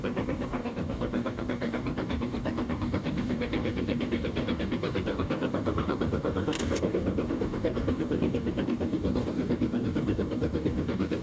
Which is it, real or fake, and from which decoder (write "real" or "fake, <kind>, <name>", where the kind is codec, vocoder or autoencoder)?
fake, codec, DAC